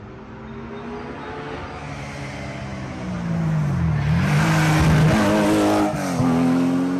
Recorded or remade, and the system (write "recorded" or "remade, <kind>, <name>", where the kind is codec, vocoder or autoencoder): recorded